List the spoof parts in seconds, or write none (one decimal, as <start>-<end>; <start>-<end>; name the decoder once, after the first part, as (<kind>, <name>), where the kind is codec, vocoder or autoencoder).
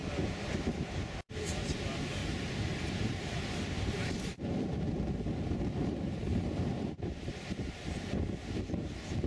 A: 0.6-2.2 (vocoder, BigVGAN v2); 2.8-9.3